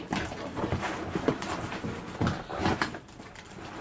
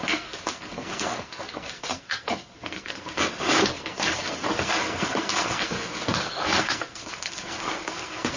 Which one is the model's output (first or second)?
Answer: second